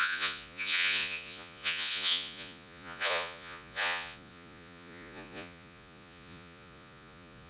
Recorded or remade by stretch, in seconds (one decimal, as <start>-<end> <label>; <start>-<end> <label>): 0.0-7.5 remade